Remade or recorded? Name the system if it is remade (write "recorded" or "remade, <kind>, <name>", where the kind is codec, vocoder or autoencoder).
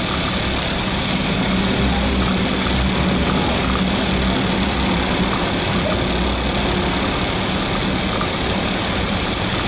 recorded